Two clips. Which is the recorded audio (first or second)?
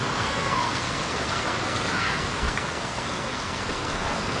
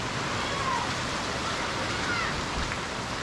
second